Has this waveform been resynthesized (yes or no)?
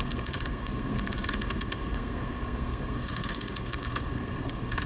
yes